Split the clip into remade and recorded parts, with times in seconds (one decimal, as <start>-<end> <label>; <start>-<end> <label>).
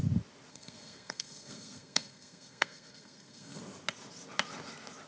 0.0-0.5 recorded; 0.5-3.6 remade; 3.6-5.1 recorded